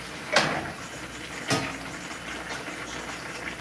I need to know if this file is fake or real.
real